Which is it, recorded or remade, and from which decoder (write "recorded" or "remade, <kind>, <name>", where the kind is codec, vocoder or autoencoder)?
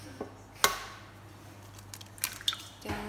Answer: recorded